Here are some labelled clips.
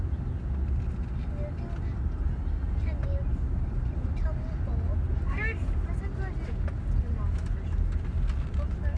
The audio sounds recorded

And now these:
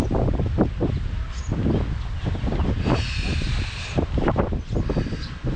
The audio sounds recorded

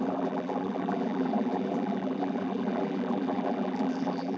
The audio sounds remade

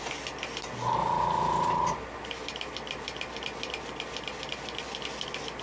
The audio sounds recorded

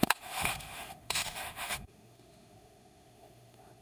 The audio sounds remade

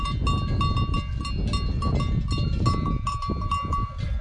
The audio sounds recorded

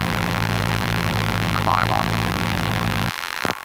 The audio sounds remade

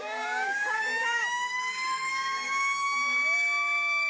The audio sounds remade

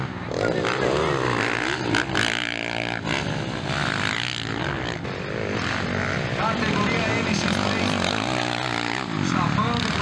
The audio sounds recorded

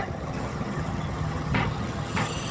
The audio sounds remade